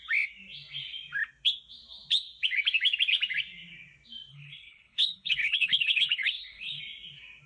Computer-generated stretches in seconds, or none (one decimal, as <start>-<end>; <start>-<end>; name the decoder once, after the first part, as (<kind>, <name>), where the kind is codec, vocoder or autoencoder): 4.3-6.8 (codec, HILCodec)